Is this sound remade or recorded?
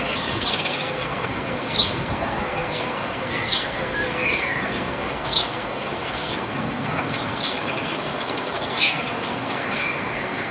remade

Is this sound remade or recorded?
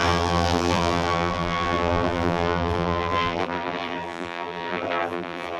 remade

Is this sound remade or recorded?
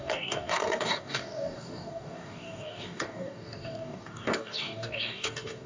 remade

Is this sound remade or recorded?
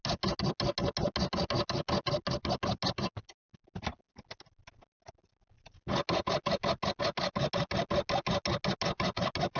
recorded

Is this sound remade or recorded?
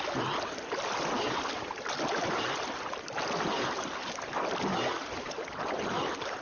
recorded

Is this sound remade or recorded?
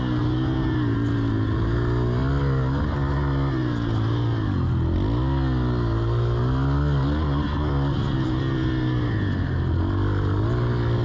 recorded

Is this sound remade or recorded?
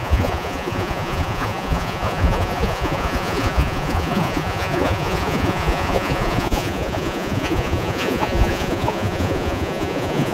remade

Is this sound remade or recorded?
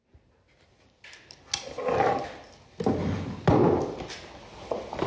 recorded